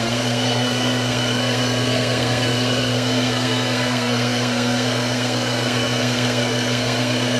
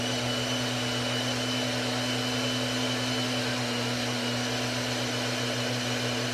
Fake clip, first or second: first